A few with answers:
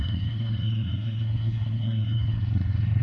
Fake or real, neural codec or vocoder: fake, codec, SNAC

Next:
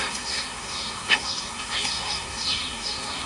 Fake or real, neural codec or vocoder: fake, codec, SNAC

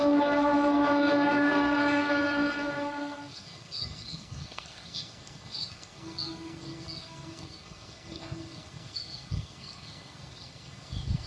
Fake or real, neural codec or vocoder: fake, codec, SNAC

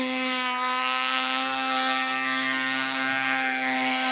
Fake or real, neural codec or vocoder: fake, codec, SNAC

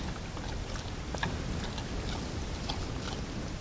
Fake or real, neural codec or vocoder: real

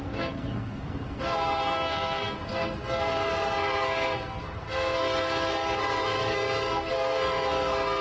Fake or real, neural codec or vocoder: fake, codec, SNAC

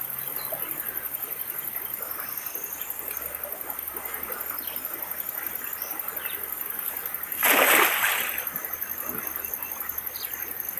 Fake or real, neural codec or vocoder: real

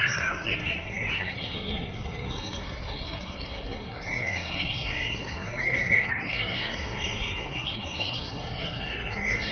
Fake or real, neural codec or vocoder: fake, codec, SNAC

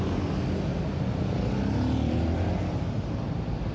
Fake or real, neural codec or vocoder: real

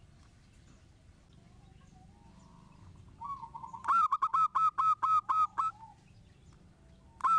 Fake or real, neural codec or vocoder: real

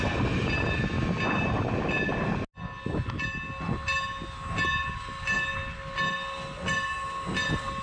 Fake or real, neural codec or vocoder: real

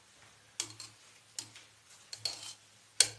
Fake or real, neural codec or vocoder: real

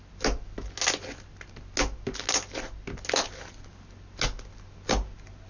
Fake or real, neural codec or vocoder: real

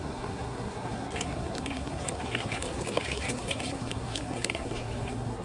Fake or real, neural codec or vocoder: fake, codec, SNAC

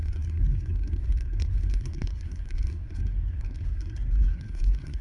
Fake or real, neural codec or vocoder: fake, codec, SNAC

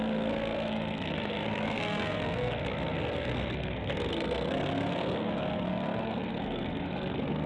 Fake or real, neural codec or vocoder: fake, codec, SNAC